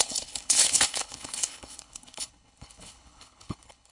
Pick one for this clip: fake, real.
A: fake